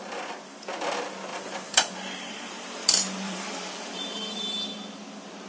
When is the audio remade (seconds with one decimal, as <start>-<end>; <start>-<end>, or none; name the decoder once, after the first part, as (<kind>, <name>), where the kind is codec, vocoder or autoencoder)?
1.3-4.6 (vocoder, BigVGAN v2)